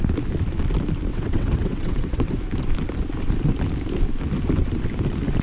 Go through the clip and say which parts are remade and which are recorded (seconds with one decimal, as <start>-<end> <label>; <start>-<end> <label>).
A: 0.0-1.1 recorded; 1.1-2.4 remade; 2.4-5.4 recorded

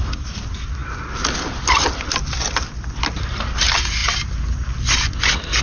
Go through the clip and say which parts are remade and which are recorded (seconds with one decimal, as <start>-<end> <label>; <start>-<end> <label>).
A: 0.0-5.6 recorded

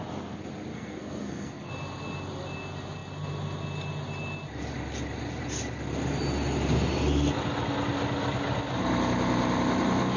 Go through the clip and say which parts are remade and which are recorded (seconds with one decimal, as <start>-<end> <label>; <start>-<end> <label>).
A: 0.0-0.7 recorded; 0.7-1.7 remade; 1.7-10.2 recorded

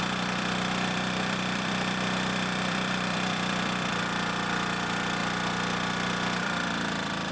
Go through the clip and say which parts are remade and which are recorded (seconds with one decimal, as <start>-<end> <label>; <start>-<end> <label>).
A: 0.0-5.2 remade; 5.2-6.4 recorded; 6.4-7.3 remade

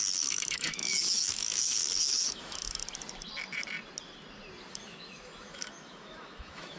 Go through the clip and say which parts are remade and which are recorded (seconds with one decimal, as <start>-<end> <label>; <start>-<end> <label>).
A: 0.0-2.8 remade; 2.8-4.7 recorded; 4.7-6.8 remade

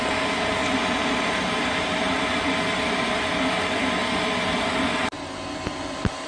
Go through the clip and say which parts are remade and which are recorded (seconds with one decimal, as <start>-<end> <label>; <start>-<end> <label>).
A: 0.0-0.6 recorded; 0.6-3.1 remade; 3.1-3.8 recorded; 3.8-5.0 remade; 5.0-6.3 recorded

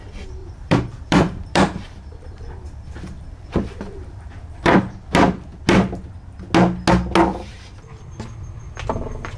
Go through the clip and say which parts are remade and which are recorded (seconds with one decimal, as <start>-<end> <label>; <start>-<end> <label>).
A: 0.0-0.4 recorded; 0.4-4.9 remade; 4.9-7.3 recorded; 7.3-8.0 remade; 8.0-9.4 recorded